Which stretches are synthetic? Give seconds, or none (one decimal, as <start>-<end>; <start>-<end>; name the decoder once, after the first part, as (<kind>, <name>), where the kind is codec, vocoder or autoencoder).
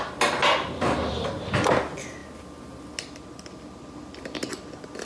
none